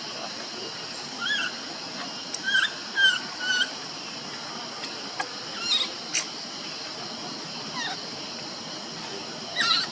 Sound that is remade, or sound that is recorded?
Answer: recorded